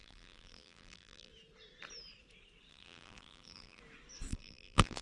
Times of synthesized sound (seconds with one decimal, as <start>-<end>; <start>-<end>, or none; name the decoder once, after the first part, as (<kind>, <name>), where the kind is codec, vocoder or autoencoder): 0.0-1.3 (vocoder, BigVGAN v2); 2.7-3.8; 4.3-5.0